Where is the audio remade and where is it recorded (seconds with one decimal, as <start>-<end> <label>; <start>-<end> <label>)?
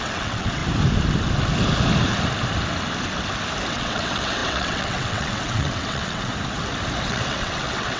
0.0-0.6 remade; 0.6-3.7 recorded; 3.7-6.3 remade; 6.3-7.0 recorded; 7.0-8.0 remade